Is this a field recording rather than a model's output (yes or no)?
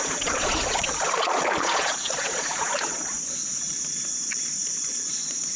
no